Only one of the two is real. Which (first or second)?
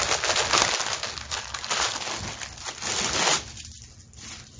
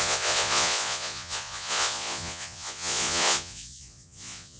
first